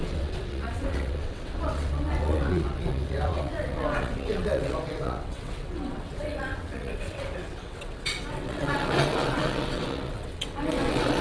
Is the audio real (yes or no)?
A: no